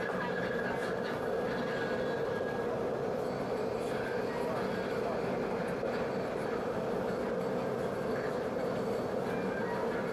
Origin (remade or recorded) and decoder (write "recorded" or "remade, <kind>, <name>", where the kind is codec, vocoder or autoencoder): recorded